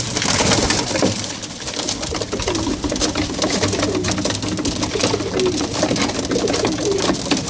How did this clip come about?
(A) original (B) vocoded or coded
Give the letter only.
A